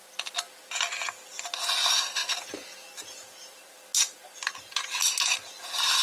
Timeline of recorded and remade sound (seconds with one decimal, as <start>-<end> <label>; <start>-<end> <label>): 0.0-6.0 recorded